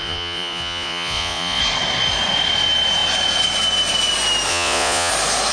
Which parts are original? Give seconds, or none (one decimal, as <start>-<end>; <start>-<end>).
1.6-4.5; 5.1-5.5